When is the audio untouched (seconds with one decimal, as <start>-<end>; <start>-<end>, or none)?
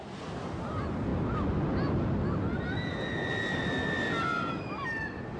0.0-5.4